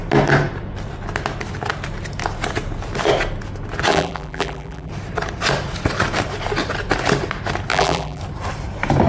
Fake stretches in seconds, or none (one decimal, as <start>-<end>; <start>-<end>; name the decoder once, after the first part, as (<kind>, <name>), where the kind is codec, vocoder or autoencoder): 3.9-4.9 (vocoder, BigVGAN v2); 7.7-8.2